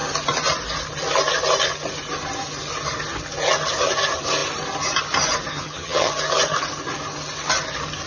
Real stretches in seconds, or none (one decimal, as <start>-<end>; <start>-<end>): 0.0-5.5; 6.1-8.1